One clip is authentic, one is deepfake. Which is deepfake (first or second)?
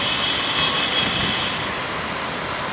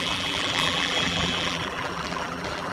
second